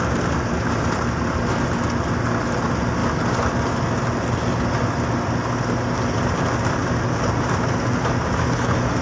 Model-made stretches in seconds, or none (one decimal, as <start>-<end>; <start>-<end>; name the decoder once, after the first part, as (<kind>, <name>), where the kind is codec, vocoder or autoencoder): none